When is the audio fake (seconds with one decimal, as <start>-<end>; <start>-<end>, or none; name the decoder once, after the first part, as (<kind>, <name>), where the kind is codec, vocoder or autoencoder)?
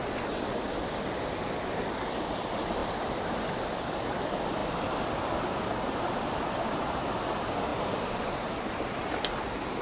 2.8-3.5 (vocoder, BigVGAN v2); 4.6-5.2; 7.7-9.1